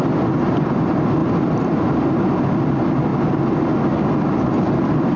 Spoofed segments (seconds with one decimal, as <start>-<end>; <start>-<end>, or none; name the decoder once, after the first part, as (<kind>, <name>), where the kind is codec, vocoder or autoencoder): 1.2-1.8 (vocoder, BigVGAN v2)